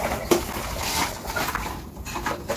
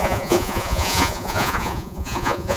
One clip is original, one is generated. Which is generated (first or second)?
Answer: second